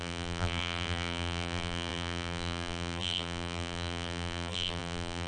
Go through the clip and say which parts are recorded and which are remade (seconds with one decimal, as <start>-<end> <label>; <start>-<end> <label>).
0.0-5.3 remade